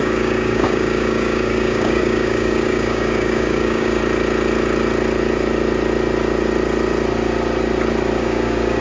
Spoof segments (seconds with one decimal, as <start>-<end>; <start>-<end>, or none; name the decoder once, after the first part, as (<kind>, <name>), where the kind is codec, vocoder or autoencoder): 0.0-4.0 (codec, DAC); 8.2-8.8